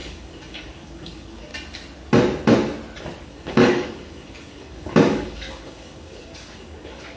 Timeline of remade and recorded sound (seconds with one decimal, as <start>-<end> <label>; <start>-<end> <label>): 0.0-1.5 remade; 1.5-3.2 recorded; 3.2-7.2 remade